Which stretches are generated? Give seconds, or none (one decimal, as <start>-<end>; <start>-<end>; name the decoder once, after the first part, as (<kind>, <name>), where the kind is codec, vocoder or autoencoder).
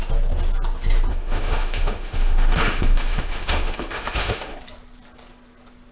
1.1-4.6 (autoencoder, DAC-VAE)